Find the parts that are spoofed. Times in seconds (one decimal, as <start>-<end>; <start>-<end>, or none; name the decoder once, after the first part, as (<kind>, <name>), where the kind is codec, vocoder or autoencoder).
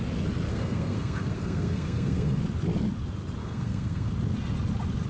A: 0.5-2.4 (codec, SNAC); 3.4-4.1